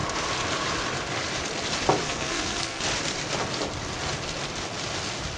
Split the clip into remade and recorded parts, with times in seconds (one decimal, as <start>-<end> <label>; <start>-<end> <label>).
0.0-2.0 recorded; 2.0-2.8 remade; 2.8-5.4 recorded